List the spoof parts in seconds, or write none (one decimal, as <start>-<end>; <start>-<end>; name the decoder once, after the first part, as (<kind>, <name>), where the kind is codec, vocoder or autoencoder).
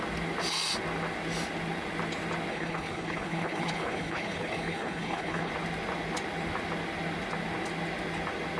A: 2.5-5.5 (codec, HILCodec)